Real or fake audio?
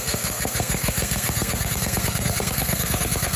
fake